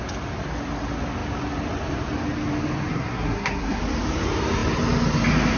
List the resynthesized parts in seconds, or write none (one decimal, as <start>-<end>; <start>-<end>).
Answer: 2.9-3.8